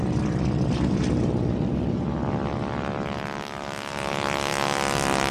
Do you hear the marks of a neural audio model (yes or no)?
no